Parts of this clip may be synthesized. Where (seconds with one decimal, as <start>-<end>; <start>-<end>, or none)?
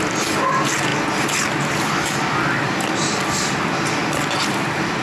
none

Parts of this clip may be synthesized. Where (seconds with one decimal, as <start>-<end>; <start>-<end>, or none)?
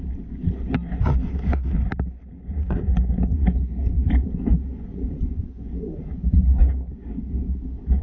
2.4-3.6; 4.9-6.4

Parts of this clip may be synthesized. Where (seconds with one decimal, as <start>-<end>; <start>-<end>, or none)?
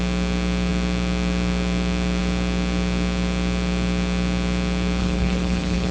5.0-5.9